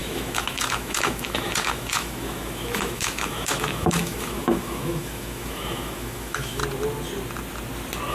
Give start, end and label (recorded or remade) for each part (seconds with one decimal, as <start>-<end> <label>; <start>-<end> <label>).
0.0-6.6 remade; 6.6-8.1 recorded